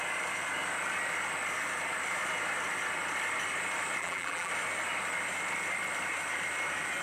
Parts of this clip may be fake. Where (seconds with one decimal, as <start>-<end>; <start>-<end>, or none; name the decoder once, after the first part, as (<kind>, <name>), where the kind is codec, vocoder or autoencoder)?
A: 4.0-4.5 (vocoder, BigVGAN v2)